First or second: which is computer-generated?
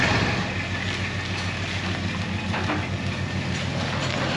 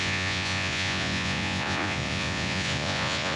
second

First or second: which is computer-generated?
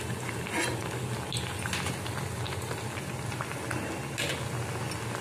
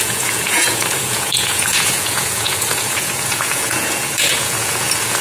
second